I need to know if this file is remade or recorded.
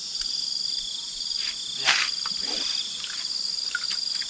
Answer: recorded